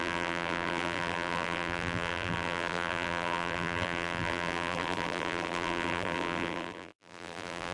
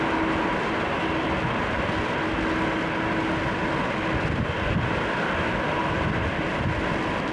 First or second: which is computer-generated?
first